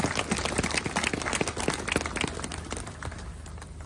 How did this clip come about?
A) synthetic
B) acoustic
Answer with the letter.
B